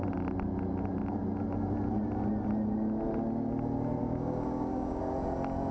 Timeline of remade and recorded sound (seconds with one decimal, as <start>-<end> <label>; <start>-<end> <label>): 0.0-4.0 recorded; 4.0-5.0 remade; 5.0-5.7 recorded